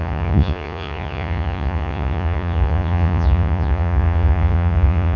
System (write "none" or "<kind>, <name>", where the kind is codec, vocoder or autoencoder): vocoder, Vocos